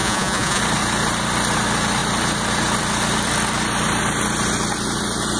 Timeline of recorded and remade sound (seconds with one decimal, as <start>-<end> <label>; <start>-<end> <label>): 0.0-0.6 remade; 0.6-5.4 recorded